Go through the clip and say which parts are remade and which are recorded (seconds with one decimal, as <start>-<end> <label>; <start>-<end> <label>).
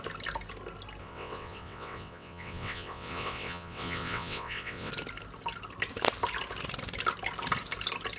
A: 0.0-1.0 recorded; 1.0-4.9 remade; 4.9-8.2 recorded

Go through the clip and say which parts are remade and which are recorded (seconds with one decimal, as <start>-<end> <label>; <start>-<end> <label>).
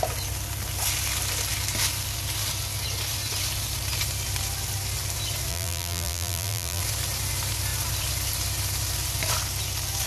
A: 0.0-5.5 recorded; 5.5-6.8 remade; 6.8-10.1 recorded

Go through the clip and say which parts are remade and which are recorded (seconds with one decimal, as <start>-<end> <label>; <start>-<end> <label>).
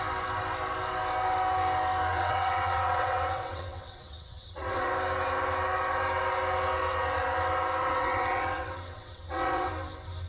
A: 0.0-2.1 recorded; 2.1-4.9 remade; 4.9-7.8 recorded; 7.8-9.7 remade; 9.7-10.3 recorded